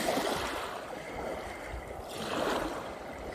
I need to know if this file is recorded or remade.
recorded